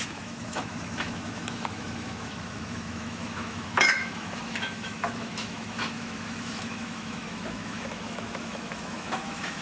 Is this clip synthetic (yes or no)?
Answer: yes